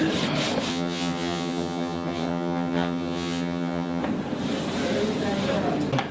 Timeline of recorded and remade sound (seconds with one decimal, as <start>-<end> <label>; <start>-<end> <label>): 0.0-0.7 recorded; 0.7-4.0 remade; 4.0-6.1 recorded